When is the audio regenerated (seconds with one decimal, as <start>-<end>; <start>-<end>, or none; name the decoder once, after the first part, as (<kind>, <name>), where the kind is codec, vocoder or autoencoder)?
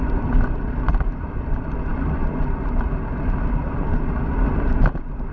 none